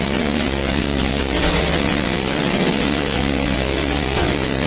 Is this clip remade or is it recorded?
remade